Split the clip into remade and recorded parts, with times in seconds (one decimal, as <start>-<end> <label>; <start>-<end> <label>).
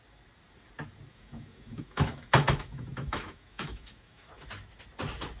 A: 0.0-1.1 recorded; 1.1-4.3 remade; 4.3-5.4 recorded